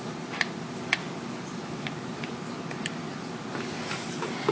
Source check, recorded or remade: recorded